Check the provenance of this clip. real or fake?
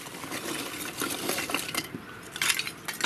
real